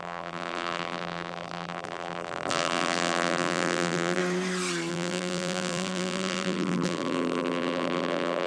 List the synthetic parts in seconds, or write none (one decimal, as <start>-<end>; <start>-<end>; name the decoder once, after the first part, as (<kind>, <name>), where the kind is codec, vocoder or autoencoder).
0.0-4.2 (vocoder, BigVGAN v2); 4.9-8.5